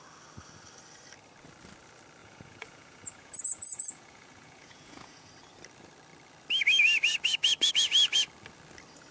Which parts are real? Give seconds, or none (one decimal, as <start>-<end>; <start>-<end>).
0.0-2.2; 5.3-9.1